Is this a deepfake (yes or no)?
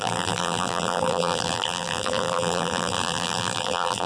yes